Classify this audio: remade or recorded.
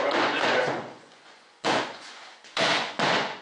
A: remade